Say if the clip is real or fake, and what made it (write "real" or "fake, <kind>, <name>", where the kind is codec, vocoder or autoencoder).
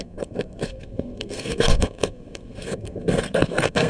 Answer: fake, codec, SNAC